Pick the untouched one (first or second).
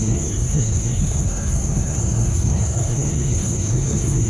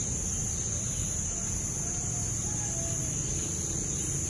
second